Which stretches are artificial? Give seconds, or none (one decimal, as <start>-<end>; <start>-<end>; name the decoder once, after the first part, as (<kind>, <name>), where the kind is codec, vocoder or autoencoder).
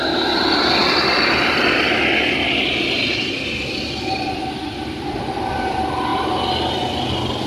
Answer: 0.0-6.1 (vocoder, BigVGAN v2); 6.6-7.5